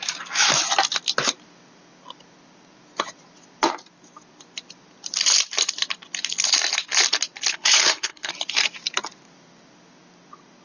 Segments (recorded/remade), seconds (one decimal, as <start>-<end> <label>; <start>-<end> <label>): 0.0-7.5 recorded; 7.5-8.3 remade; 8.3-10.6 recorded